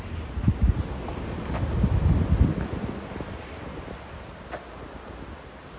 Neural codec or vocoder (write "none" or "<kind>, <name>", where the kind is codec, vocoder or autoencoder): none